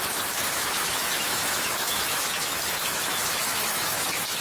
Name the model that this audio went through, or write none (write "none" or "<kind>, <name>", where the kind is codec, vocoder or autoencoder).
autoencoder, DAC-VAE